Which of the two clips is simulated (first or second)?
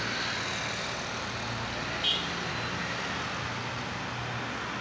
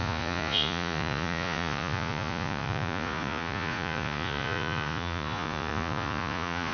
second